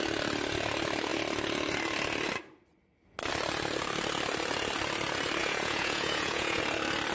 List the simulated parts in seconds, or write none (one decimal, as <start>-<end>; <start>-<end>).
5.4-6.6